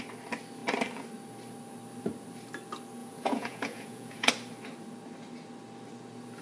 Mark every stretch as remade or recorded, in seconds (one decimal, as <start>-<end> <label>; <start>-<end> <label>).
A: 0.0-3.0 recorded; 3.0-4.3 remade; 4.3-6.4 recorded

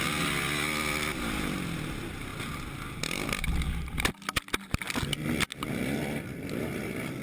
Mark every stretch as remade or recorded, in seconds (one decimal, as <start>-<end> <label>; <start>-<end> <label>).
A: 0.0-7.2 recorded

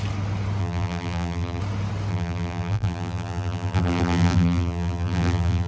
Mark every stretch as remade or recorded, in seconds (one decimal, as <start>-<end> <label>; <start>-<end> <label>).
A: 0.0-0.6 recorded; 0.6-1.6 remade; 1.6-2.1 recorded; 2.1-5.7 remade

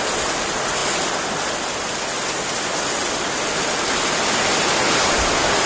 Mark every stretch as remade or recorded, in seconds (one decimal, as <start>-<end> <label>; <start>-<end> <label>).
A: 0.0-5.7 recorded